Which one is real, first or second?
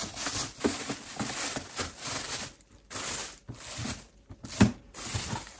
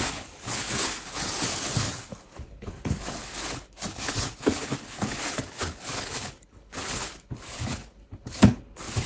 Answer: first